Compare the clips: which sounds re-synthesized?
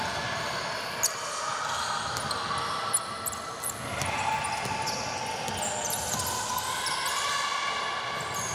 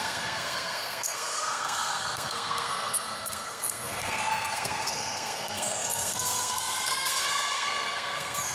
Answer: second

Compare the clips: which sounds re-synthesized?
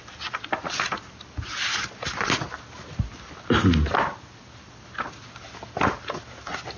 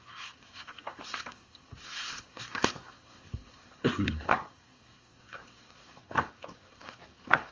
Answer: second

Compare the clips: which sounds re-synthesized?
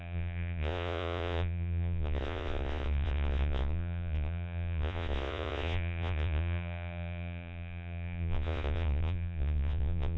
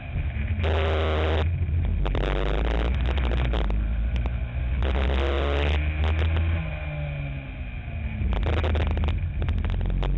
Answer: first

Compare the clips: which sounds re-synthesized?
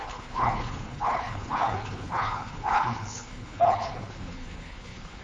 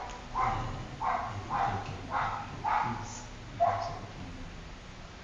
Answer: first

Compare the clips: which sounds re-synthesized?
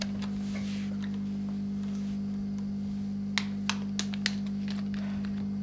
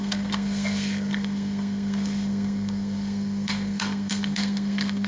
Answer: second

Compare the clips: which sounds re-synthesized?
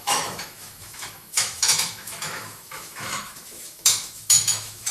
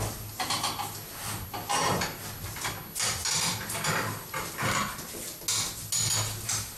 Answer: first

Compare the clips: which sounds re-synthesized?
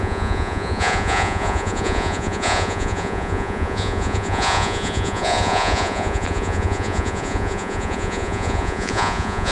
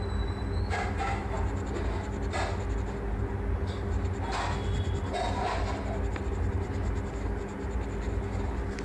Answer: first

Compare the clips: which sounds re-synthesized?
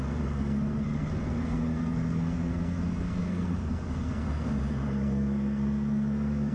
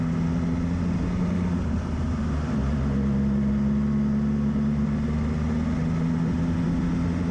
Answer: first